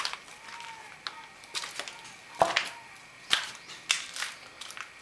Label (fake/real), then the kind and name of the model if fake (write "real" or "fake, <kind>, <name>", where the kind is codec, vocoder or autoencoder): real